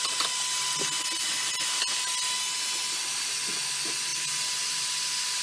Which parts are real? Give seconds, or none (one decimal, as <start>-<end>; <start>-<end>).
0.0-5.4